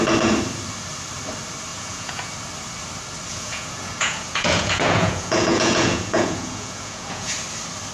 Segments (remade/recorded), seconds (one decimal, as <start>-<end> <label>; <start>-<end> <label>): 0.0-1.7 recorded; 1.7-2.3 remade; 2.3-3.3 recorded; 3.3-7.3 remade; 7.3-7.9 recorded